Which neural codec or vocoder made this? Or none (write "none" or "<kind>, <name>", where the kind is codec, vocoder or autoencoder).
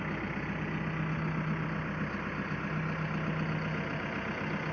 none